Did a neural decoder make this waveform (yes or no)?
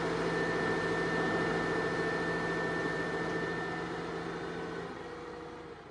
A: no